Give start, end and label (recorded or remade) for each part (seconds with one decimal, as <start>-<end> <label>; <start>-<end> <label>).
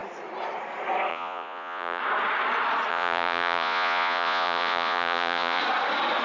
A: 0.0-1.1 recorded; 1.1-2.0 remade; 2.0-2.9 recorded; 2.9-5.6 remade; 5.6-6.2 recorded